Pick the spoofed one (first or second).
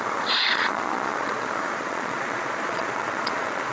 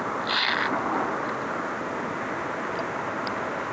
first